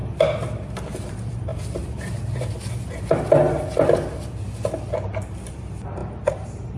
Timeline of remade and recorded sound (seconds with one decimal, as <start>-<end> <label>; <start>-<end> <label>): 0.0-1.1 recorded; 1.1-1.5 remade; 1.5-5.5 recorded; 5.5-6.8 remade